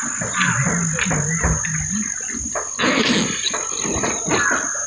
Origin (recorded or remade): recorded